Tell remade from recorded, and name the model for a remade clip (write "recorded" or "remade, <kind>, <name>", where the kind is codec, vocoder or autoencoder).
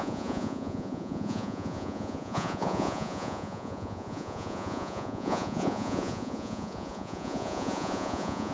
remade, vocoder, Vocos